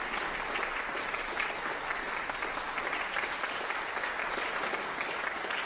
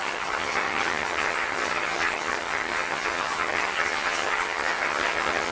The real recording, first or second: first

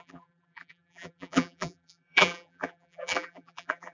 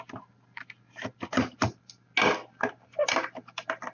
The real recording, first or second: second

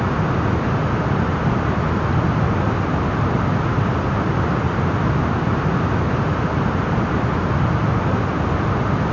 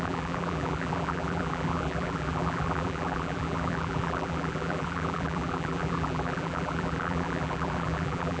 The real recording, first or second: first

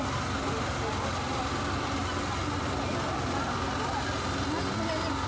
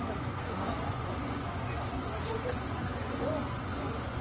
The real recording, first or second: first